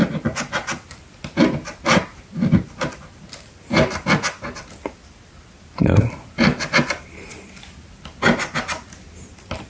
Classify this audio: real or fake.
real